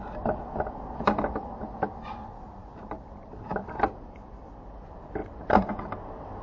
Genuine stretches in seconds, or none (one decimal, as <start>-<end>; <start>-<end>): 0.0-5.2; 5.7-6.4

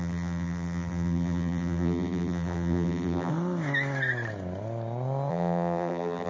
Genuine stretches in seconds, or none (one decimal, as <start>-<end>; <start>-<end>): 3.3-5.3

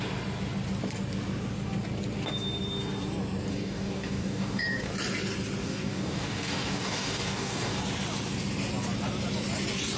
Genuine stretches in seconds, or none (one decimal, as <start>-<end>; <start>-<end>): 0.0-3.5; 4.9-5.6; 7.8-10.0

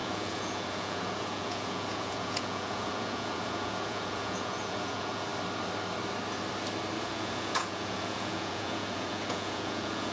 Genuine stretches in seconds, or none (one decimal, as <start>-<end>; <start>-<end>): 5.3-7.0